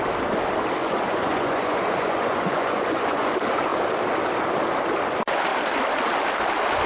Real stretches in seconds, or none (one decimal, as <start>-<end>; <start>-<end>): 0.0-0.8; 3.3-6.9